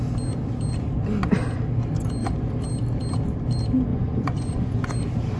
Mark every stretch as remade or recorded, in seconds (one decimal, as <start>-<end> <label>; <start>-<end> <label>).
0.0-3.9 recorded; 3.9-4.9 remade; 4.9-5.4 recorded